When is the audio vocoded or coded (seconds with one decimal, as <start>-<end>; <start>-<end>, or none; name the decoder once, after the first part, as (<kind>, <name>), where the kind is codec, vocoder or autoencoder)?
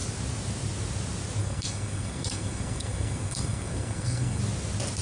1.4-4.4 (codec, SNAC)